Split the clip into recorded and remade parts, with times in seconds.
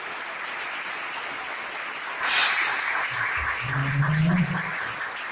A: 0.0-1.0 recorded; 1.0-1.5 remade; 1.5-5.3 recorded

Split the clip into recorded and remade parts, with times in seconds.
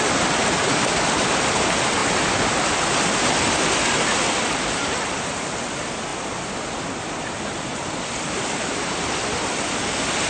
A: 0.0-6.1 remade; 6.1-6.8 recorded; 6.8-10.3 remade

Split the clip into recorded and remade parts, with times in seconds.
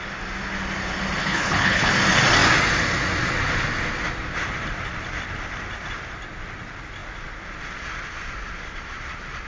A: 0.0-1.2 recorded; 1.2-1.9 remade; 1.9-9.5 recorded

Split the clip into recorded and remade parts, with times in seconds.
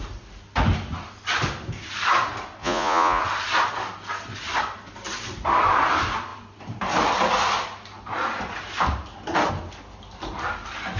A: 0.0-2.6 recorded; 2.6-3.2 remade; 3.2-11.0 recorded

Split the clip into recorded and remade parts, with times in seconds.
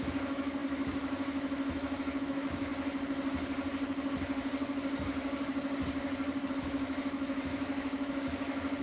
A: 0.0-2.7 remade; 2.7-6.5 recorded; 6.5-8.8 remade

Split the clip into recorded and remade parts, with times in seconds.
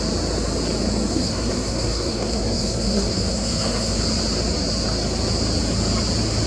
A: 0.0-1.1 recorded; 1.1-4.0 remade; 4.0-6.5 recorded